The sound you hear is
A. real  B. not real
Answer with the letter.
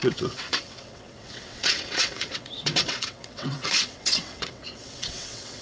B